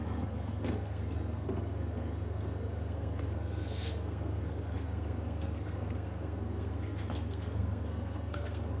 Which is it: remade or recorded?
remade